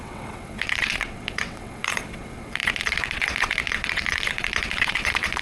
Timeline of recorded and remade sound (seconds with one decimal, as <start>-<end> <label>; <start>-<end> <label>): 0.0-5.4 remade